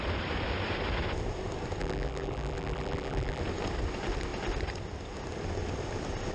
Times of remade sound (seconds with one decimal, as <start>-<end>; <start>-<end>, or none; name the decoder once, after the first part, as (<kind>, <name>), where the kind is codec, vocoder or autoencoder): 1.8-3.4 (vocoder, BigVGAN v2)